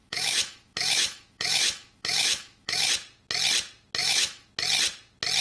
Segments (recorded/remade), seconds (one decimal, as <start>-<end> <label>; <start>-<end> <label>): 0.0-2.9 remade; 2.9-4.0 recorded; 4.0-4.5 remade; 4.5-5.4 recorded